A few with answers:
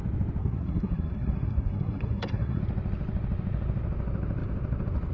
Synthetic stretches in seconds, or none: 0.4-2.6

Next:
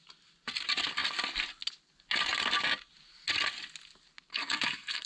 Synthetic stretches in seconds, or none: 4.3-5.1